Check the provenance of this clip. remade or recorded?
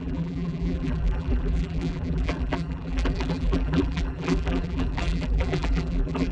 remade